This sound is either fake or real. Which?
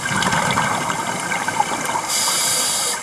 real